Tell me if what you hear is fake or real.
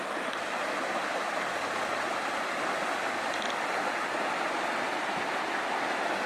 fake